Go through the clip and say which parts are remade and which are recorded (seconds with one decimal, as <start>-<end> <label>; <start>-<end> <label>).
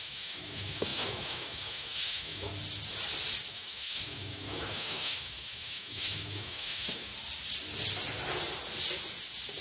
0.0-2.5 remade; 2.5-3.5 recorded; 3.5-7.1 remade; 7.1-9.6 recorded